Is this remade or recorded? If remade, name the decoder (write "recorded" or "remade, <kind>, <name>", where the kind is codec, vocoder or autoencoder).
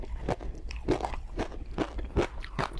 recorded